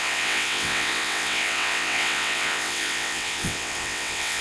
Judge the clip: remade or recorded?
remade